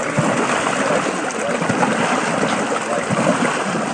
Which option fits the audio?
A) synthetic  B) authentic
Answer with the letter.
B